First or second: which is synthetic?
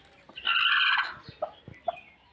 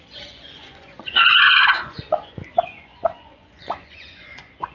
second